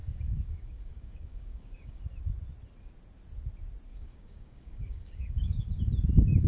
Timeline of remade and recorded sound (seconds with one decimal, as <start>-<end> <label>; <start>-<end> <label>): 0.0-2.0 remade; 2.0-3.9 recorded; 3.9-5.8 remade; 5.8-6.5 recorded